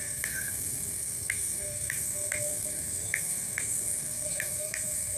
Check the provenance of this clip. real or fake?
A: fake